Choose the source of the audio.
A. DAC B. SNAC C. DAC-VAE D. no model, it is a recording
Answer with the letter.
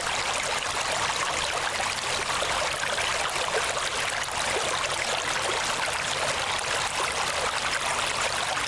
D